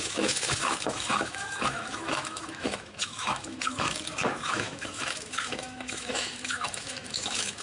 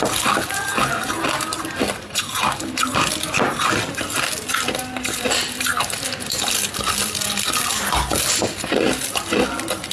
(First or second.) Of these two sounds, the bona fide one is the second